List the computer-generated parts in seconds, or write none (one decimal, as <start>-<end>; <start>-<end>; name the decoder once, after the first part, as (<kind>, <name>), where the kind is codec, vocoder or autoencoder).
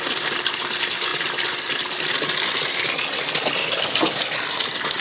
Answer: 3.6-4.2 (codec, DAC)